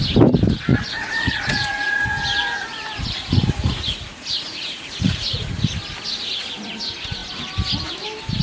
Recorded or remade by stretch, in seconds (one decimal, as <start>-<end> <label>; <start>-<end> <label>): 0.0-0.7 recorded; 0.7-5.7 remade; 5.7-8.4 recorded